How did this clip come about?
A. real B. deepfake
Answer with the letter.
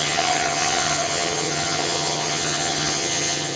B